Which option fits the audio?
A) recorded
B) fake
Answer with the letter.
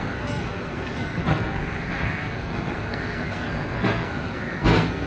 B